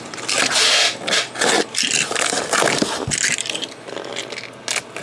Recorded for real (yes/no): yes